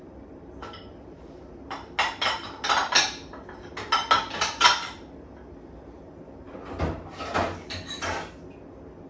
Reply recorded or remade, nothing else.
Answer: recorded